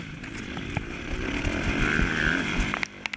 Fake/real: real